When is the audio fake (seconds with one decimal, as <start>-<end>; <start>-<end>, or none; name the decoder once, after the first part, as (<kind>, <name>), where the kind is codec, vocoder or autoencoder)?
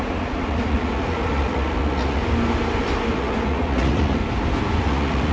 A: 0.0-2.2 (vocoder, Vocos); 3.1-4.2; 4.8-5.3